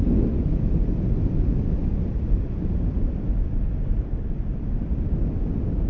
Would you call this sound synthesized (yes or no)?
no